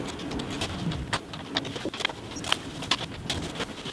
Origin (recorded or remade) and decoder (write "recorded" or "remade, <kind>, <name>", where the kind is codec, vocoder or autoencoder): recorded